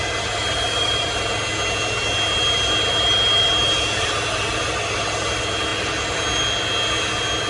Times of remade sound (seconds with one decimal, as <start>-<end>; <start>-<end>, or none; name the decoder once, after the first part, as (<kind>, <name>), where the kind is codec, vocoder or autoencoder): none